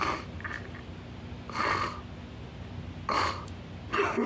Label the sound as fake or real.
real